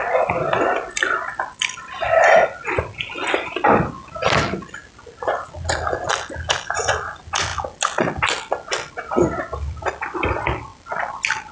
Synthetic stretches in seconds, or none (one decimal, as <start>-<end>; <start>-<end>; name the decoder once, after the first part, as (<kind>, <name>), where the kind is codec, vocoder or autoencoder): none